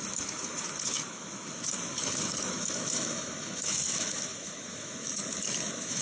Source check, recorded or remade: remade